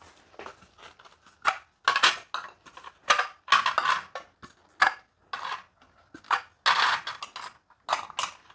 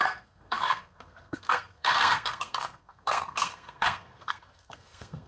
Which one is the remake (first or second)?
second